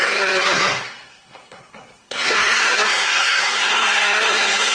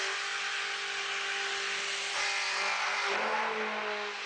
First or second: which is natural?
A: second